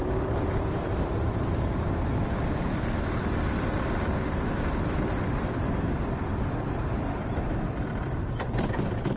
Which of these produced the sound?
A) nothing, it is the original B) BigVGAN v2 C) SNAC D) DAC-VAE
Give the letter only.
B